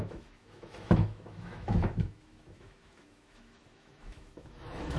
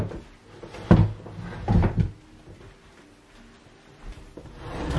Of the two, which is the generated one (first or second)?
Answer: first